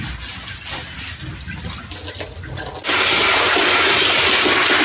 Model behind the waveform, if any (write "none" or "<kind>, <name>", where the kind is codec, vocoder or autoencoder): none